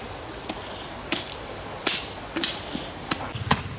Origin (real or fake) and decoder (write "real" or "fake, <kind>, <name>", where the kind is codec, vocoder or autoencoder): real